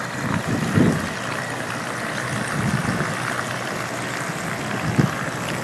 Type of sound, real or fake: real